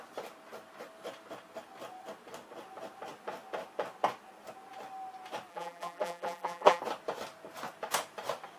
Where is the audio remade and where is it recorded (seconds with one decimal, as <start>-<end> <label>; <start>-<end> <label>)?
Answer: 0.0-5.5 recorded; 5.5-6.8 remade; 6.8-8.6 recorded